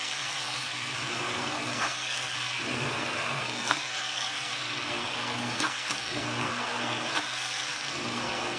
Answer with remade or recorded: remade